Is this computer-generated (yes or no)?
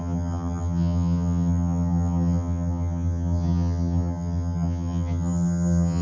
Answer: yes